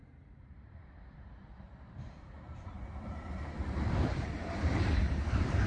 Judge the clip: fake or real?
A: fake